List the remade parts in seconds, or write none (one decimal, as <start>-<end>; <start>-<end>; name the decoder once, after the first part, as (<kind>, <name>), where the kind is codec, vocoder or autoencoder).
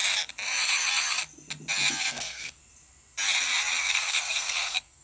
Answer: 2.1-2.6 (codec, SNAC); 3.8-5.0